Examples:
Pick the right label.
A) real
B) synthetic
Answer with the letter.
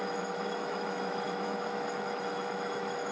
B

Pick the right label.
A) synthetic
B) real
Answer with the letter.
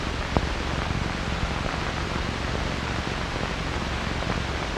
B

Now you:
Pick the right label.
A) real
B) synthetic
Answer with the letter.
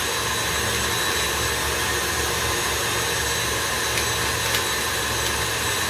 A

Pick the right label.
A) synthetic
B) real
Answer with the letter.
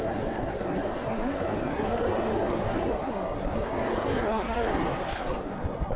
A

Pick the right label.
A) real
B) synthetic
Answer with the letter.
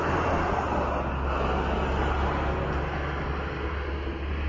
A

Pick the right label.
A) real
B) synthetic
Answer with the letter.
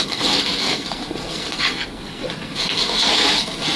B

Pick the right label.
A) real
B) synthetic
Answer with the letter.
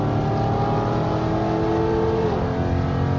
A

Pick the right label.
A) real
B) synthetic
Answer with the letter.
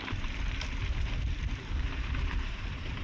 B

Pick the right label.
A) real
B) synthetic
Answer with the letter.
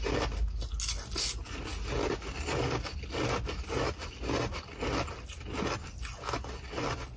A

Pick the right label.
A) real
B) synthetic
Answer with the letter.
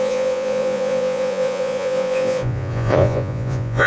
B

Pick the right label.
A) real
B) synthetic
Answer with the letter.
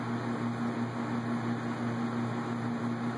A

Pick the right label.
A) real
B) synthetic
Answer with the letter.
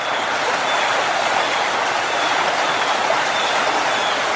A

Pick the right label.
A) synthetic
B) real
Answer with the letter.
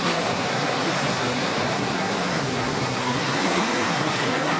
A